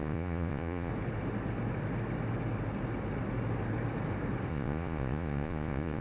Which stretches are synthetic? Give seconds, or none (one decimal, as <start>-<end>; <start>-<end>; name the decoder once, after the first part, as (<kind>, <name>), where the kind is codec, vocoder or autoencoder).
0.0-0.9 (vocoder, Vocos); 4.5-6.0